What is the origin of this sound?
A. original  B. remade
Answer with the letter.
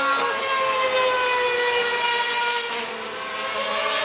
A